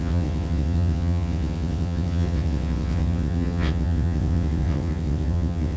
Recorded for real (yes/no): no